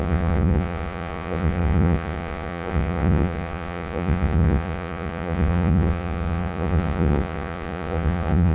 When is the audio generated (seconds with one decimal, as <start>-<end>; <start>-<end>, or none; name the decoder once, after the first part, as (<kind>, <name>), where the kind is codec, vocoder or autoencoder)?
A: 0.0-8.5 (vocoder, Vocos)